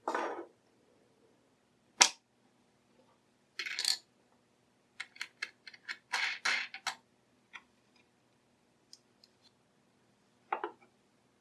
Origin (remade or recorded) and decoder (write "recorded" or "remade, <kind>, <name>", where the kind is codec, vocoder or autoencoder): recorded